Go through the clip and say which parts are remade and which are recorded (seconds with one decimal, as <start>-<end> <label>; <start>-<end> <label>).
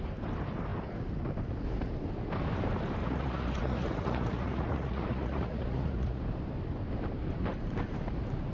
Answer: 0.0-3.0 recorded; 3.0-6.2 remade; 6.2-8.5 recorded